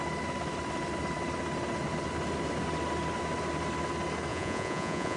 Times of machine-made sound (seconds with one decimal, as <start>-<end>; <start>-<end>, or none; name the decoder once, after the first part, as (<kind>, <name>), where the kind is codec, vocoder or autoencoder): 4.3-5.2 (vocoder, Vocos)